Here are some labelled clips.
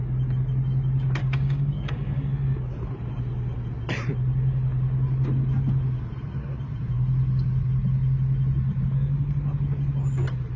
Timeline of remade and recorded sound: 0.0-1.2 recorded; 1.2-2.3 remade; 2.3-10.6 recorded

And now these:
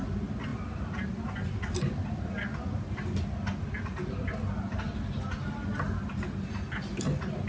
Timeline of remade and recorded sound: 0.0-7.5 recorded